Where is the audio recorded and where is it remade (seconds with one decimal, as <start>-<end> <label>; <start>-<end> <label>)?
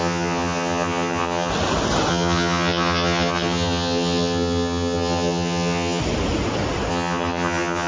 0.0-1.5 remade; 1.5-2.1 recorded; 2.1-6.0 remade; 6.0-6.9 recorded; 6.9-7.9 remade